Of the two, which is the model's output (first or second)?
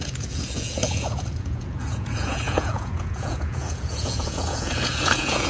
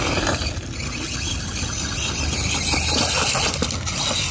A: first